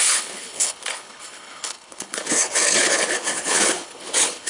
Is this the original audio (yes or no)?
no